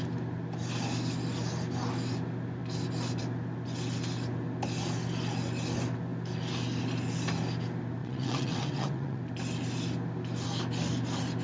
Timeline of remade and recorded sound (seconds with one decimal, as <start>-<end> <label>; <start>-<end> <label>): 0.0-8.0 recorded; 8.0-9.2 remade; 9.2-11.4 recorded